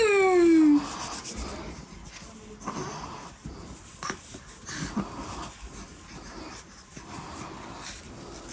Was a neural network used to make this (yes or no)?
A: no